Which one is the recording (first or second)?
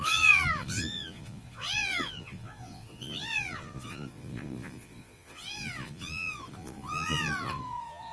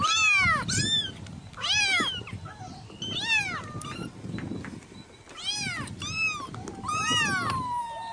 second